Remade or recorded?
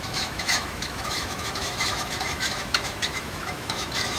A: remade